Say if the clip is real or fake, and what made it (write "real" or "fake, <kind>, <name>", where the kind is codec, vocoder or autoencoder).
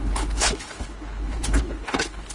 fake, codec, HILCodec